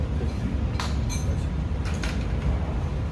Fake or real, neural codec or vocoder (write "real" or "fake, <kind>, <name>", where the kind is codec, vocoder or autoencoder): real